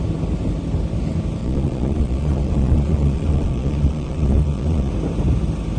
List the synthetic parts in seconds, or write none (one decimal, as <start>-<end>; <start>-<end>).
1.4-4.9